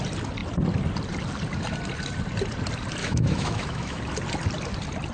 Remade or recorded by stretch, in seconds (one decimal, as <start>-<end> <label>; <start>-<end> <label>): 0.0-3.0 recorded; 3.0-4.0 remade; 4.0-5.1 recorded